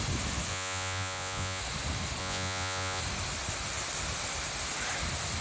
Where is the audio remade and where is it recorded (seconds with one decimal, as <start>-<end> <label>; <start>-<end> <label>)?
0.0-0.5 recorded; 0.5-1.6 remade; 1.6-2.2 recorded; 2.2-3.0 remade; 3.0-5.4 recorded